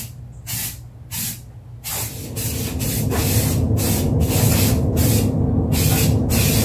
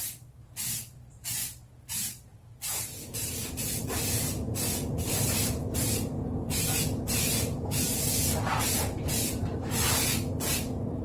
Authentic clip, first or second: first